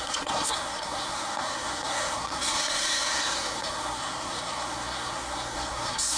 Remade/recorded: remade